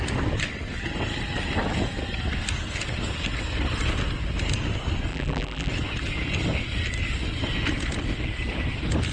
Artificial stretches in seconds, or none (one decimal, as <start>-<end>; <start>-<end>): 5.1-5.7